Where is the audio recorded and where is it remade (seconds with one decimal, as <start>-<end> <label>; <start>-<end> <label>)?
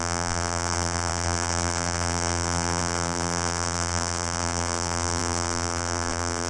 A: 0.0-6.5 remade